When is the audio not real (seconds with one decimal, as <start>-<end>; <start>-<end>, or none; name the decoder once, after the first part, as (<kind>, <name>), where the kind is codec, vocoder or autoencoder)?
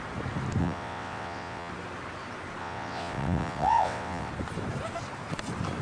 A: 0.6-1.7 (vocoder, WaveNeXt); 2.6-4.3